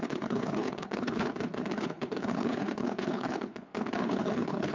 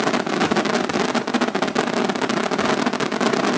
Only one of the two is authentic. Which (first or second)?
second